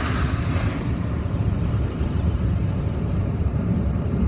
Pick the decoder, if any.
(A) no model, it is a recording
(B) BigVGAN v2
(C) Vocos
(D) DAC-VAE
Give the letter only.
B